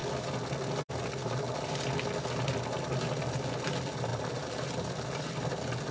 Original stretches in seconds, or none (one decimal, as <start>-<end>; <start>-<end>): 0.0-3.5